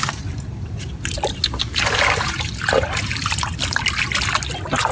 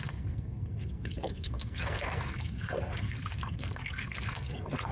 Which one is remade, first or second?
second